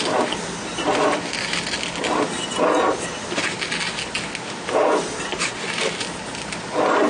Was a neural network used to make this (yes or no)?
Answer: no